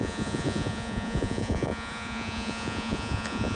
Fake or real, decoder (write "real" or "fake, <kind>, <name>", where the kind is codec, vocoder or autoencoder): fake, vocoder, Vocos